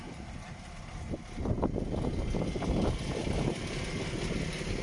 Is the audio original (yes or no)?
yes